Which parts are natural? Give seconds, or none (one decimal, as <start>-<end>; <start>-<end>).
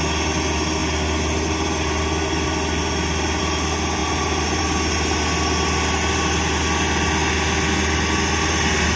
0.0-9.0